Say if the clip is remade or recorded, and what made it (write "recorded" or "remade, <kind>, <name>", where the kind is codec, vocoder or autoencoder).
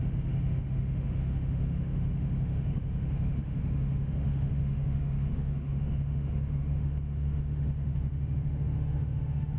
remade, autoencoder, DAC-VAE